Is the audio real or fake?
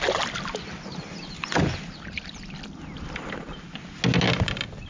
real